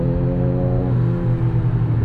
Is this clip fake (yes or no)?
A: no